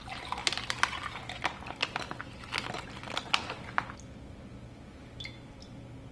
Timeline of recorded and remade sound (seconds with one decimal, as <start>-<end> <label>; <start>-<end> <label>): 0.0-6.1 recorded